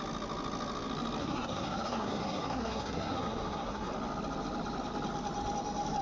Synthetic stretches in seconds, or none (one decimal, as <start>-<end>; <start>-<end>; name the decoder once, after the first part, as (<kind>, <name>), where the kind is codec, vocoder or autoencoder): 1.2-3.9 (codec, SNAC)